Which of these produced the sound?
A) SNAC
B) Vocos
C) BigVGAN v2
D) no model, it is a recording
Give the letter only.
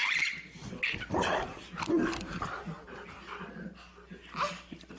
D